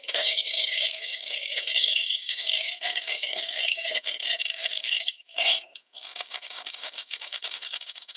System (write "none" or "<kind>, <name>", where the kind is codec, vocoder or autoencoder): codec, DAC